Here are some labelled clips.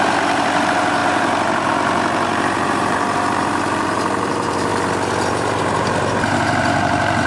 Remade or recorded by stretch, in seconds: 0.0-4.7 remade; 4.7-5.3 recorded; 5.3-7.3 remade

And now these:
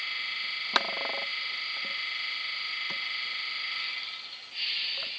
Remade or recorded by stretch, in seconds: 0.0-1.3 recorded; 1.3-4.2 remade; 4.2-5.2 recorded

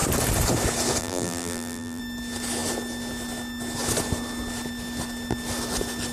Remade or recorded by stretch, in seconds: 0.0-1.0 recorded; 1.0-2.0 remade; 2.0-6.1 recorded